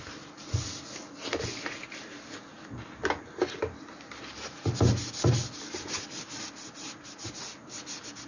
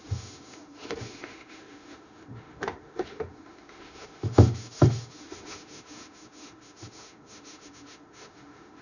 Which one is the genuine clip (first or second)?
first